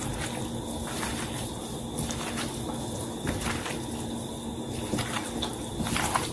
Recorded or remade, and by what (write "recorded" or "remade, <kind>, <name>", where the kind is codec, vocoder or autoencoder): recorded